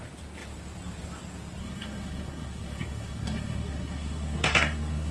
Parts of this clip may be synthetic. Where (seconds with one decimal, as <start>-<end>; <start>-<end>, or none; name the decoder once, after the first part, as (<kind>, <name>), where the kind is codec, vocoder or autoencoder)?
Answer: 1.6-5.1 (codec, SNAC)